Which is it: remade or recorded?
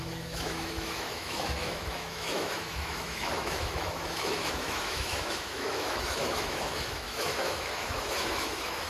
remade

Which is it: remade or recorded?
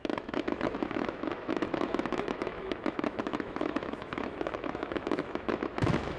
remade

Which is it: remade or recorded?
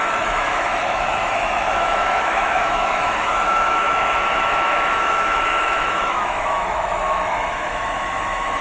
remade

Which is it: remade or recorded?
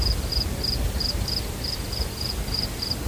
recorded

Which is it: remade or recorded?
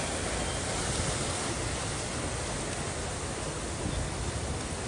recorded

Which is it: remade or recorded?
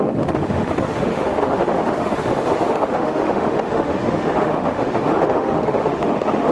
remade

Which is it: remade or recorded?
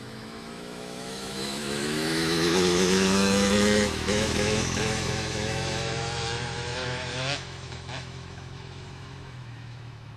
remade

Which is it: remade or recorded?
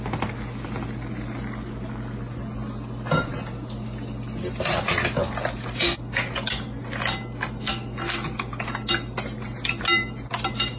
recorded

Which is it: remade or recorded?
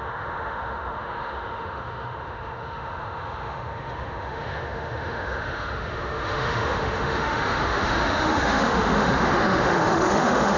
remade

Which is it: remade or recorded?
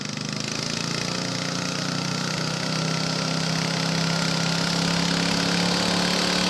recorded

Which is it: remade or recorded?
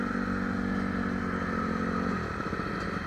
recorded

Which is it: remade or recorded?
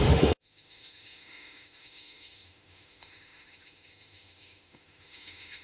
remade